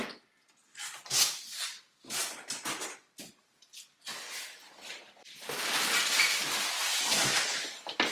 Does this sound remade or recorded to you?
recorded